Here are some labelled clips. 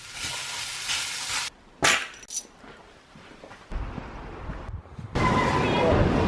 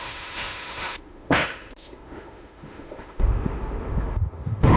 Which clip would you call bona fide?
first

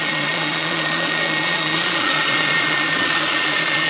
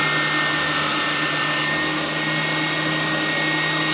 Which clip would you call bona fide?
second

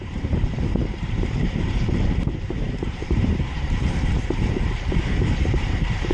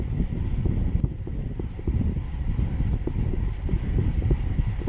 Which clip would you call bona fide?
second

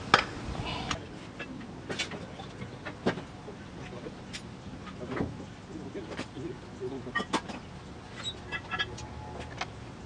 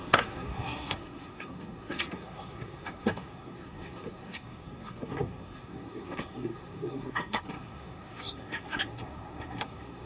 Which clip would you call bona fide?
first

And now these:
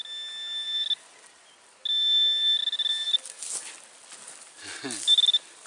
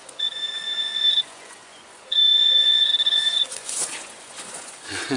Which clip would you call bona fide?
first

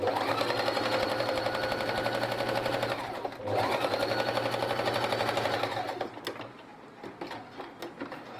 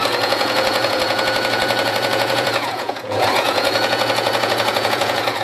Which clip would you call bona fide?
first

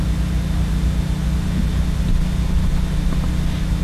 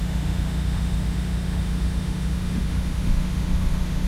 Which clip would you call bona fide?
first